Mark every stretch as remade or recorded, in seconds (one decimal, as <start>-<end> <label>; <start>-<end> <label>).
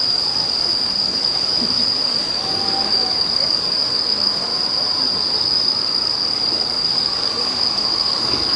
0.0-4.5 remade; 4.5-5.3 recorded; 5.3-8.6 remade